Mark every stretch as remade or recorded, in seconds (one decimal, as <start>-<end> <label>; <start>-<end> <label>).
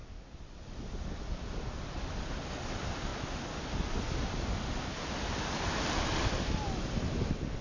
0.0-7.6 recorded